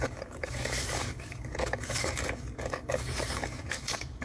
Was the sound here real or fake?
fake